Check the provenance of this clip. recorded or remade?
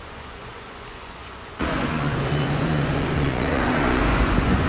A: remade